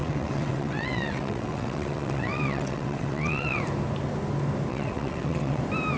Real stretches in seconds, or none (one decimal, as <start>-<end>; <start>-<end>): 3.6-4.7; 5.6-6.0